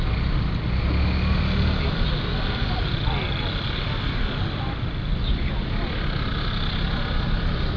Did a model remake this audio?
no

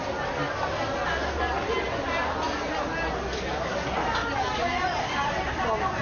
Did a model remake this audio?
no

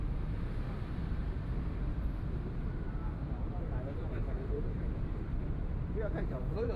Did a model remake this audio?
yes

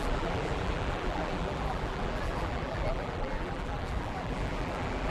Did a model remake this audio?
yes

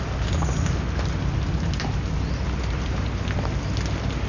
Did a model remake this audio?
no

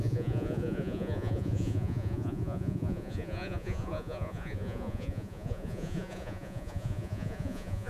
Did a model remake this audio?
yes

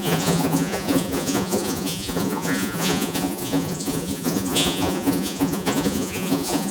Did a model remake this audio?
yes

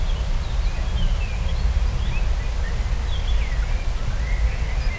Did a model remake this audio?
no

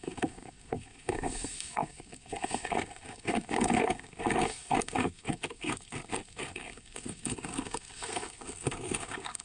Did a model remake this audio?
yes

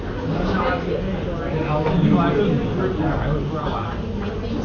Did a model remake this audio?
no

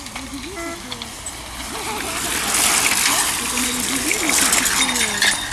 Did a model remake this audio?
no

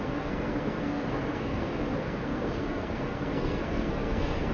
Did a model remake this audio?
yes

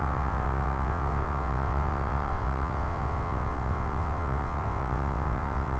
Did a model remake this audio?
yes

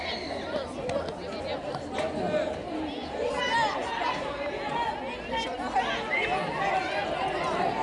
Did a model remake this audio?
no